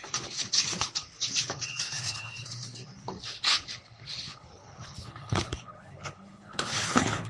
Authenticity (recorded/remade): remade